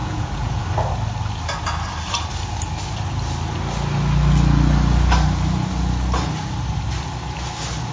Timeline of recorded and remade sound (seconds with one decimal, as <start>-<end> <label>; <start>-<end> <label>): 0.0-0.6 remade; 0.6-7.9 recorded